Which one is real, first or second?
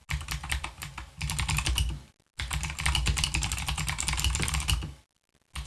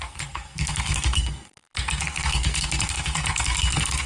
first